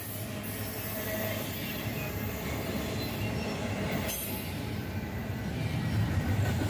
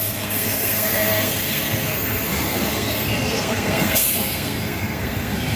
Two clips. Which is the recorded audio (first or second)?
first